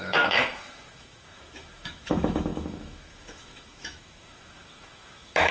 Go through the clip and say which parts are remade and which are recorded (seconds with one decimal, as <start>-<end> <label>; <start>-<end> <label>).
0.0-5.5 remade